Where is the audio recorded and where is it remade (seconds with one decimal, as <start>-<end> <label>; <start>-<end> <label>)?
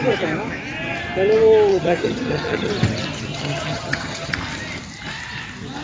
0.0-1.7 recorded; 1.7-2.7 remade; 2.7-3.3 recorded; 3.3-4.3 remade; 4.3-5.8 recorded